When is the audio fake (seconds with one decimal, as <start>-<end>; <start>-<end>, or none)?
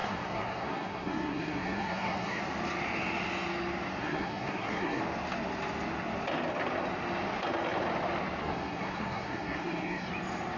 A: 0.0-2.4; 4.0-5.0; 8.4-10.1